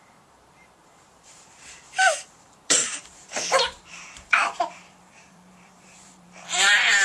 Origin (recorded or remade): remade